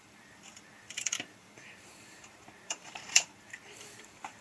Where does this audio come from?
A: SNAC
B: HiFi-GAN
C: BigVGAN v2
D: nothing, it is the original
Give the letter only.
C